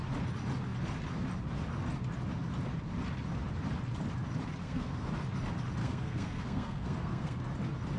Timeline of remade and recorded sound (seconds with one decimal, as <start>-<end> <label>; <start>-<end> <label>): 0.0-4.6 recorded; 4.6-5.1 remade; 5.1-5.8 recorded; 5.8-7.4 remade; 7.4-8.0 recorded